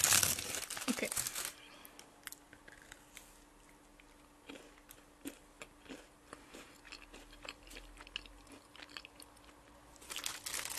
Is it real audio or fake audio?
real